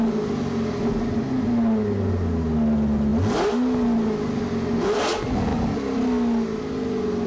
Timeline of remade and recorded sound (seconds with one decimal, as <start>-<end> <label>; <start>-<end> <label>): 0.0-7.3 recorded